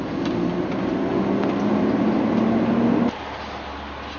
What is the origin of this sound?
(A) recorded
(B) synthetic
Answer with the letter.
A